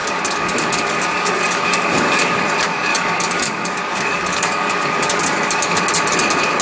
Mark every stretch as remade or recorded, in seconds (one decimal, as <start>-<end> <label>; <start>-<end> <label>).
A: 0.0-2.4 remade; 2.4-2.9 recorded; 2.9-5.8 remade; 5.8-6.6 recorded